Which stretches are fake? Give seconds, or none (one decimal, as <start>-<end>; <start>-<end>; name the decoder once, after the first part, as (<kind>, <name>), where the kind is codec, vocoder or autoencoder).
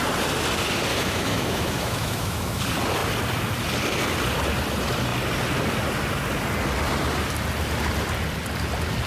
0.9-2.6 (autoencoder, DAC-VAE)